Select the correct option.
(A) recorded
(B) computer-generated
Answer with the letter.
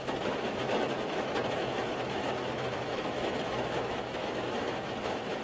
B